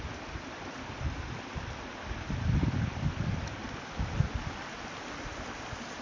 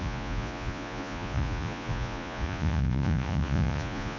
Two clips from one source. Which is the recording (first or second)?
first